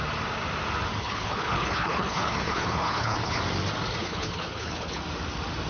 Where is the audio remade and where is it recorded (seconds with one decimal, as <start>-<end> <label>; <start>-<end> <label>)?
0.0-1.0 recorded; 1.0-3.4 remade; 3.4-4.0 recorded; 4.0-5.0 remade; 5.0-5.7 recorded